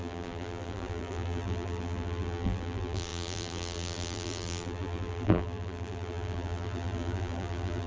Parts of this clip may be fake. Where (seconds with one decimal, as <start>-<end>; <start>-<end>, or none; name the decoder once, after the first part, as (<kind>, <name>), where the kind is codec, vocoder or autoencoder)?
0.0-7.9 (vocoder, BigVGAN v2)